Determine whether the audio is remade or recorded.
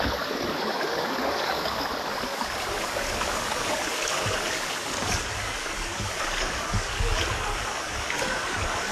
remade